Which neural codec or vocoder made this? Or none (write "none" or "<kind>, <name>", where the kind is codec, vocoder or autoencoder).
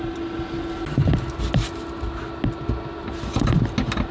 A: none